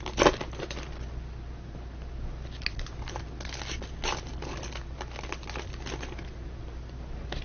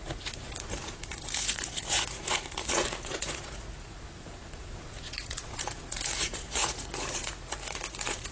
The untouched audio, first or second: first